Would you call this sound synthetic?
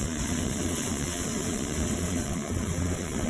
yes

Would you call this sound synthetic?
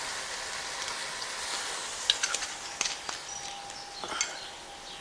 no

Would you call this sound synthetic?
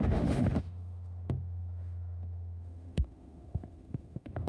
yes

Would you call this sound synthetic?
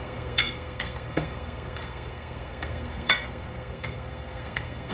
yes